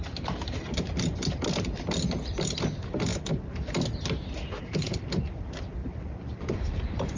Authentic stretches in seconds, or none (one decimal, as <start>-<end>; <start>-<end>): 0.0-7.2